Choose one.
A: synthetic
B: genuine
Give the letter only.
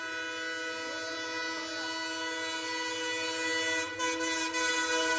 B